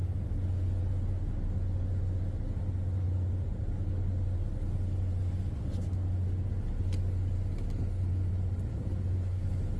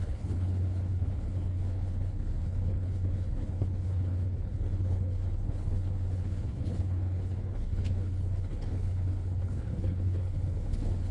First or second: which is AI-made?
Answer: second